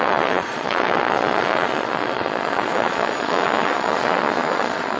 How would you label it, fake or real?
fake